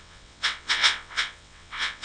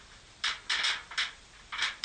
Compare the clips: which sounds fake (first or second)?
first